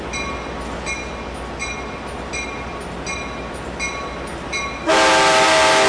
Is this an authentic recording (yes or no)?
yes